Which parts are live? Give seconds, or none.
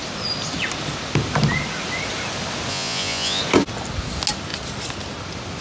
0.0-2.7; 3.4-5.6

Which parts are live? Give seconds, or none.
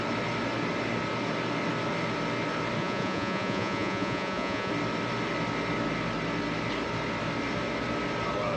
0.0-2.8; 4.7-8.6